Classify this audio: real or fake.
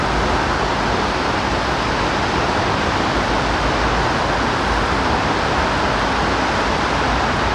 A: real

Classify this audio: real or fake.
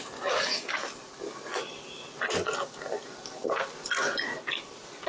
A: real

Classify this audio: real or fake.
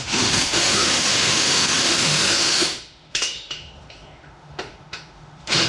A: fake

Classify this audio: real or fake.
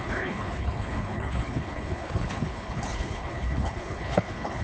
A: fake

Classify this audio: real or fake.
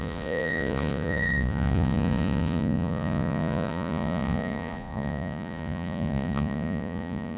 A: fake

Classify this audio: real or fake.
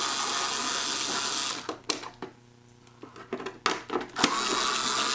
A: real